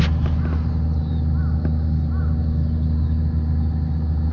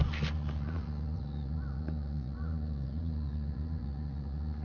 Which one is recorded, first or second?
first